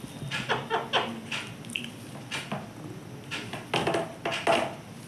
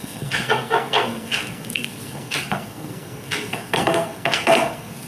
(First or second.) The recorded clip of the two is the first